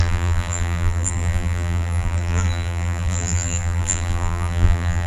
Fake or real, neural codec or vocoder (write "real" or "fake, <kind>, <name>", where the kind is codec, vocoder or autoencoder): fake, vocoder, BigVGAN v2